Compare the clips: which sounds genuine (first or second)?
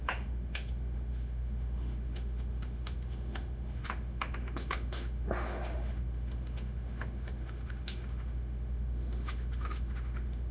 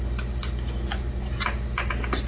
second